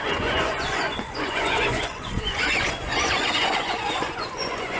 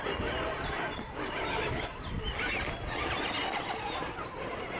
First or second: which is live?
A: second